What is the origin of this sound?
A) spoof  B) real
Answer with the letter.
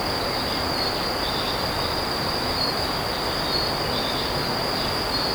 B